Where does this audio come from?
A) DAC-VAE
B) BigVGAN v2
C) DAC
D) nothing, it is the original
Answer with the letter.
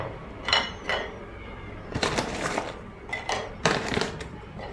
B